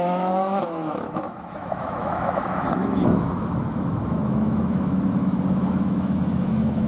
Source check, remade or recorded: remade